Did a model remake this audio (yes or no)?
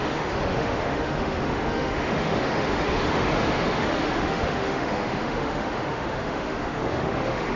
yes